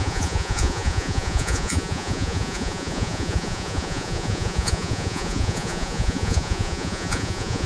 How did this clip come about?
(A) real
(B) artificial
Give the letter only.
B